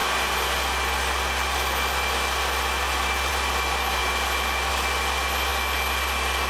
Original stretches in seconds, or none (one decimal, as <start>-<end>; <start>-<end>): 0.0-6.5